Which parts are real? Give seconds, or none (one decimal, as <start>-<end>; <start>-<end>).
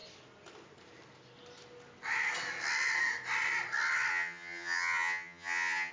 0.0-4.1